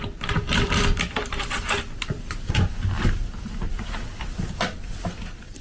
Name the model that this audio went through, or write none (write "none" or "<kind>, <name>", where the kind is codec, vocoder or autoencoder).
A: vocoder, BigVGAN v2